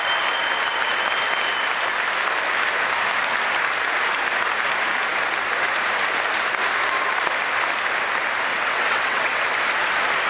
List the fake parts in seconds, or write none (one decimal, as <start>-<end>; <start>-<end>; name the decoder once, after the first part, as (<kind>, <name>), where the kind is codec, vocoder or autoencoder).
8.5-9.4 (vocoder, WaveNeXt)